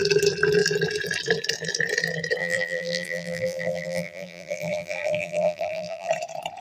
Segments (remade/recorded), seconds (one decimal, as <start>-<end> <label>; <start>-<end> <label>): 0.0-2.4 recorded; 2.4-6.1 remade; 6.1-6.6 recorded